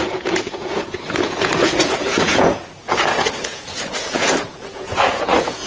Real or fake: fake